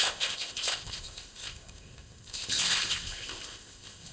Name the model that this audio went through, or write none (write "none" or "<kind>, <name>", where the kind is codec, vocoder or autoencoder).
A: codec, ZipCodec